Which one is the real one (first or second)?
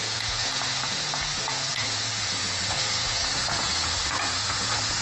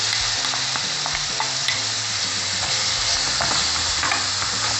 second